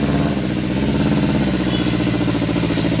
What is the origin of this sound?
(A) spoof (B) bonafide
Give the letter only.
B